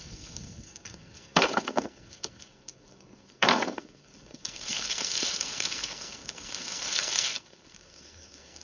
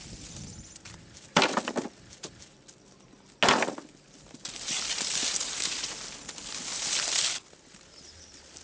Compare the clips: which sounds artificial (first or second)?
first